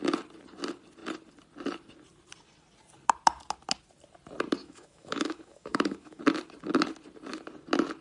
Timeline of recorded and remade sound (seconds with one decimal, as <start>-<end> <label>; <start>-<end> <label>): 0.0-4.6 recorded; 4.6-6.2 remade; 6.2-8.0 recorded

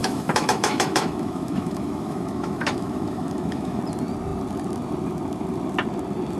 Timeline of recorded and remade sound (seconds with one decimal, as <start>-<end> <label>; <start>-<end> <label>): 0.0-3.8 remade; 3.8-6.4 recorded

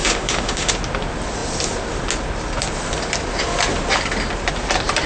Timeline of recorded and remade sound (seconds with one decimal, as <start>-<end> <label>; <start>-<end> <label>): 0.0-0.7 remade; 0.7-5.1 recorded